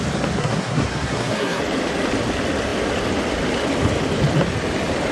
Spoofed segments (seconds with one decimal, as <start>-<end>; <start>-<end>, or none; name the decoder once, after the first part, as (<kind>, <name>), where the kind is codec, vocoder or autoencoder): 0.4-1.6 (codec, SNAC)